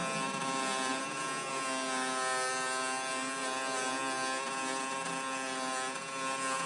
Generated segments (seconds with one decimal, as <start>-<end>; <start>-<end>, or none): none